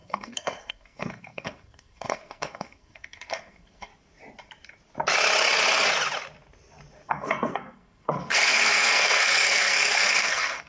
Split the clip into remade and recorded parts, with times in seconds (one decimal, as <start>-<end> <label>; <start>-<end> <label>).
0.0-3.9 remade; 3.9-7.1 recorded; 7.1-10.7 remade